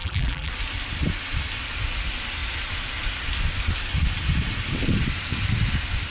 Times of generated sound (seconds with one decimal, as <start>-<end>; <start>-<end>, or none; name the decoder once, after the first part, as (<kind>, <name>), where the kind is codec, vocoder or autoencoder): 0.0-0.5 (vocoder, BigVGAN v2)